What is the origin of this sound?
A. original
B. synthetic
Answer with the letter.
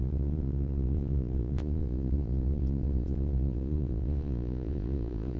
B